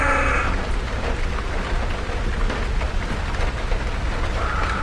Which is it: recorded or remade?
recorded